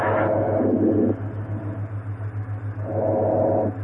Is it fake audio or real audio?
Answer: real